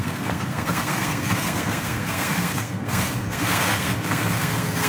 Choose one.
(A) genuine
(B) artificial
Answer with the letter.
B